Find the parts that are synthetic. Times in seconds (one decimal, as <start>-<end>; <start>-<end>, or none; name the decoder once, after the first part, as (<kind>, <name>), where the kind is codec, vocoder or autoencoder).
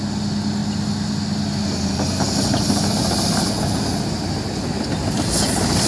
none